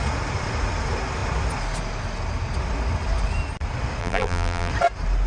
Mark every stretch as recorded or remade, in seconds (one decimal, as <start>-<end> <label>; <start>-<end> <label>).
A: 0.0-4.0 recorded; 4.0-4.7 remade; 4.7-5.3 recorded